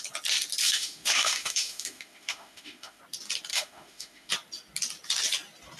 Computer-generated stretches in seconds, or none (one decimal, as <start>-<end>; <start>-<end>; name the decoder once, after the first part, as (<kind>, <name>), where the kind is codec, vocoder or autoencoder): 0.6-3.0 (autoencoder, DAC-VAE); 3.5-4.3